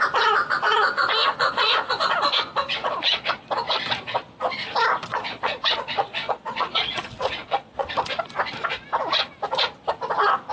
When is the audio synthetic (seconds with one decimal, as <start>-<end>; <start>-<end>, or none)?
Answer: 1.2-2.0; 2.8-3.5; 5.1-7.9